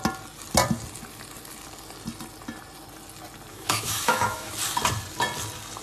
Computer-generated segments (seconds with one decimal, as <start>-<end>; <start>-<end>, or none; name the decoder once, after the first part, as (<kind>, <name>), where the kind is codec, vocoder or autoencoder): 3.5-4.5 (autoencoder, DAC-VAE)